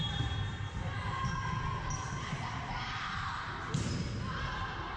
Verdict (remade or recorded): remade